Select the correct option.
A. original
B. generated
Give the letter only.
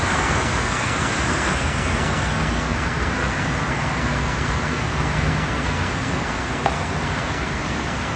B